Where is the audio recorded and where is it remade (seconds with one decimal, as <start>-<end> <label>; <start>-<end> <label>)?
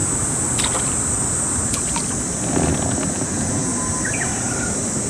0.0-3.1 recorded; 3.1-3.7 remade; 3.7-5.1 recorded